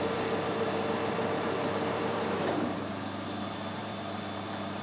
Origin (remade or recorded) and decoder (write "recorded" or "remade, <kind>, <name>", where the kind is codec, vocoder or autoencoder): remade, vocoder, BigVGAN v2